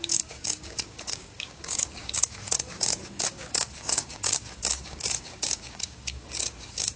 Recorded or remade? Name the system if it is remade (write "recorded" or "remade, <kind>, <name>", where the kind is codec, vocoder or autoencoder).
remade, codec, DAC